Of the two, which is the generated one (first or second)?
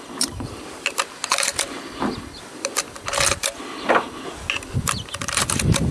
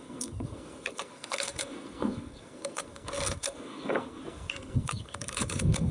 second